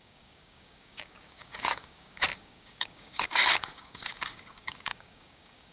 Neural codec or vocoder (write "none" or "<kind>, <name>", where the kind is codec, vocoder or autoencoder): codec, DAC